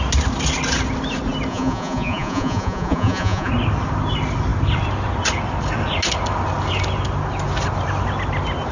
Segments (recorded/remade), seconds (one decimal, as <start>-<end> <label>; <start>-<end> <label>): 0.0-1.5 recorded; 1.5-3.5 remade; 3.5-8.7 recorded